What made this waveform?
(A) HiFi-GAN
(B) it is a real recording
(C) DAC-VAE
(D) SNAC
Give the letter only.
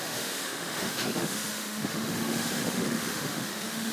C